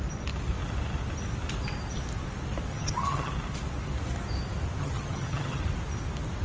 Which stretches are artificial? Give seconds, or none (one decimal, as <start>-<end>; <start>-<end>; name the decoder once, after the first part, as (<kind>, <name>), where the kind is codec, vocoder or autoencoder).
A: 2.7-3.3 (vocoder, HiFi-GAN); 4.8-5.6